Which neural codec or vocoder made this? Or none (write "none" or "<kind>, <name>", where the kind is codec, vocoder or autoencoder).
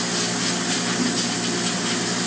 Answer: none